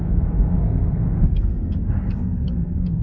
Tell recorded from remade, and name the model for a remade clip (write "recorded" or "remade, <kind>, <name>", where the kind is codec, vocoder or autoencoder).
remade, codec, SNAC